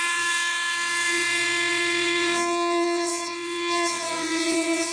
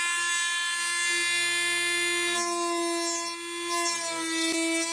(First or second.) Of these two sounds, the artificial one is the first